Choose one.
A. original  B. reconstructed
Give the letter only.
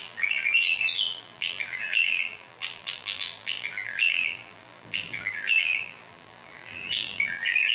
B